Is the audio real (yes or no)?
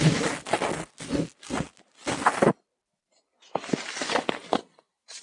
yes